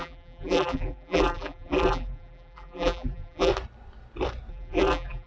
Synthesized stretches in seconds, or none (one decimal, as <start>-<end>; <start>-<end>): 0.0-3.5; 4.5-5.3